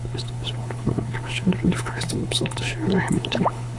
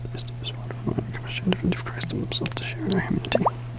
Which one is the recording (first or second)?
second